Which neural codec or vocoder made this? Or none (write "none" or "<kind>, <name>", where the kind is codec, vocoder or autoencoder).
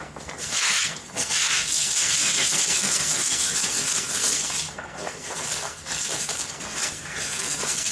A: codec, SNAC